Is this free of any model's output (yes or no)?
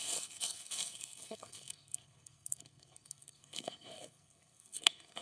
no